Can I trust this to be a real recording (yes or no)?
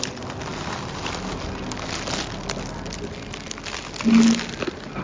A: yes